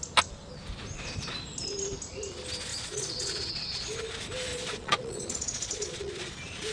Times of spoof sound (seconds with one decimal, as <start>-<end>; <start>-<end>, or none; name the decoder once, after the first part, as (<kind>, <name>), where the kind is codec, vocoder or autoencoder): 2.7-3.9 (vocoder, Vocos); 4.5-6.3